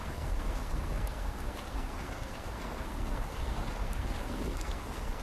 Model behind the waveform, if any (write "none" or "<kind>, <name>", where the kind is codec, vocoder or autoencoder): codec, SNAC